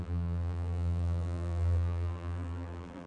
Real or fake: fake